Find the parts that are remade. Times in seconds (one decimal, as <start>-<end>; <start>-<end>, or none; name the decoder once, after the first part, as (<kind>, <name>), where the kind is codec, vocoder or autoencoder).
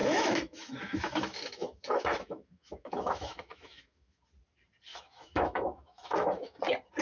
0.0-4.2 (autoencoder, DAC-VAE); 4.9-6.6